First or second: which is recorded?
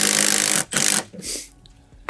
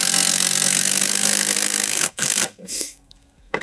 first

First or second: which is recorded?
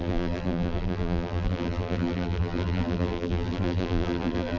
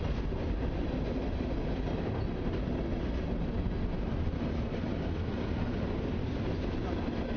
second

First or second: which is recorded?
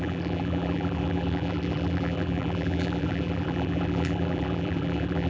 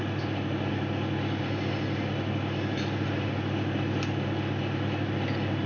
second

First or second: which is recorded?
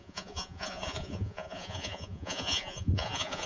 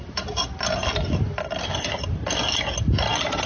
second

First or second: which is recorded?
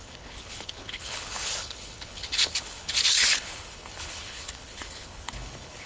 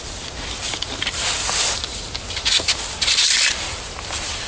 second